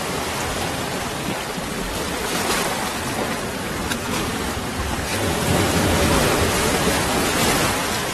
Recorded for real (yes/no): yes